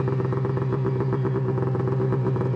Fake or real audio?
real